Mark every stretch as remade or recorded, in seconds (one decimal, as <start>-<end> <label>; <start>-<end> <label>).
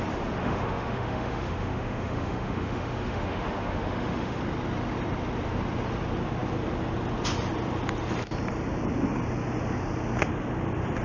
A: 0.0-0.4 recorded; 0.4-4.4 remade; 4.4-11.0 recorded